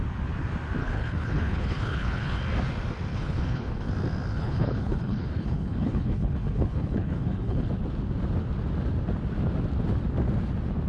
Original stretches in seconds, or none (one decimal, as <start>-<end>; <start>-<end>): 0.0-0.8; 2.4-3.1; 3.9-4.3; 7.7-10.9

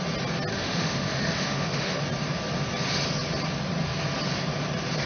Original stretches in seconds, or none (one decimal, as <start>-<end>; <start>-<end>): 0.0-0.5; 2.0-5.1

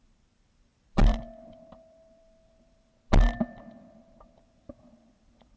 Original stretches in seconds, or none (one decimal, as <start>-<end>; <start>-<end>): 2.9-4.4

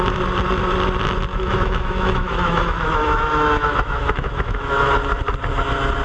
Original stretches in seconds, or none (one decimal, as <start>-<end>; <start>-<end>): 0.0-1.3; 4.9-6.0

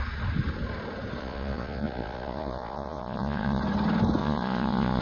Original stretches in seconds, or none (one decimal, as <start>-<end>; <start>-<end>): 0.0-1.2; 3.6-4.2

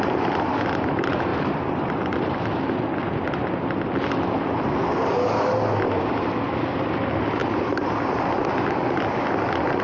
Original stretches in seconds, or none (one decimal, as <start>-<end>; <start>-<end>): 0.0-1.3; 2.5-7.4; 8.5-9.8